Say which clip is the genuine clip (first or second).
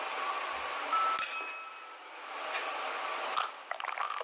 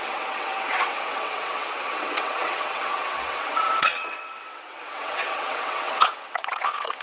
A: first